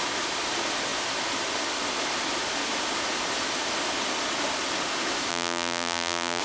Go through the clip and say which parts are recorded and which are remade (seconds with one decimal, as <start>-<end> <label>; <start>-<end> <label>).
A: 0.0-5.3 recorded; 5.3-6.4 remade